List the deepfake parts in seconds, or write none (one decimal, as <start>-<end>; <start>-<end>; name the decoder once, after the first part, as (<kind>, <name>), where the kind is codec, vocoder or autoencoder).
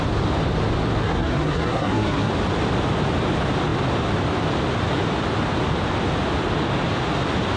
1.0-2.3 (codec, SNAC)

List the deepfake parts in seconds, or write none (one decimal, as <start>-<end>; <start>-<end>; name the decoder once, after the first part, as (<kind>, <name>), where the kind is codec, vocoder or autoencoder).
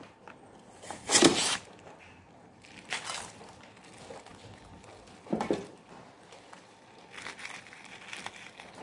none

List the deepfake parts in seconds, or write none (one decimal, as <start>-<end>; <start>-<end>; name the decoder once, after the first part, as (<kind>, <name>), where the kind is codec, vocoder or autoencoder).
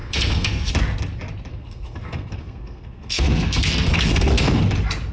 0.0-0.7 (codec, SNAC); 1.5-4.6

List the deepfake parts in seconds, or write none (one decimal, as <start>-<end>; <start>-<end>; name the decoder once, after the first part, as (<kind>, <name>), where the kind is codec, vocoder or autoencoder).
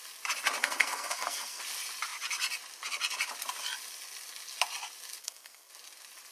0.6-1.6 (codec, SNAC); 5.2-5.7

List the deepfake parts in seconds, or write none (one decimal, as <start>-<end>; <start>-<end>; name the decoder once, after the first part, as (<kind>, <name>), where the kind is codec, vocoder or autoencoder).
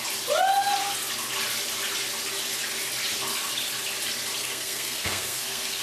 4.4-5.8 (codec, SNAC)